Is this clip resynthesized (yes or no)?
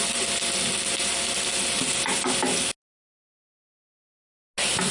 no